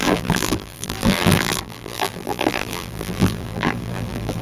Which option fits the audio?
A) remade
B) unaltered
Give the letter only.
A